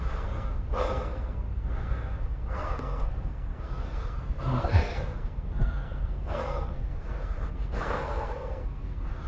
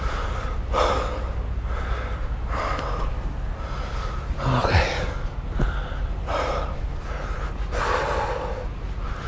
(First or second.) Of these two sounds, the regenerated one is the first